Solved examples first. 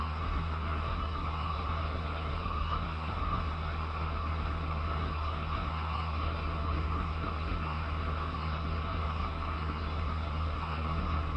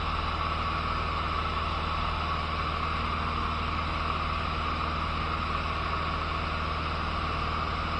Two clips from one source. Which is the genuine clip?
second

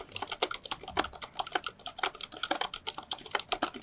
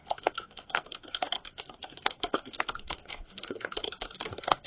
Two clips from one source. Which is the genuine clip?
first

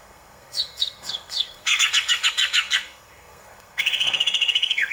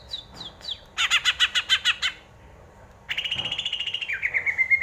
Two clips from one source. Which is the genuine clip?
second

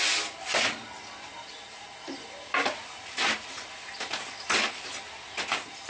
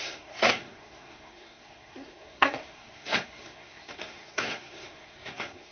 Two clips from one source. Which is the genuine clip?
first